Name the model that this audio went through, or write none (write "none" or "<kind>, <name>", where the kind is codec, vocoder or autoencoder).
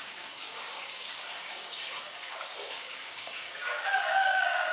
codec, DAC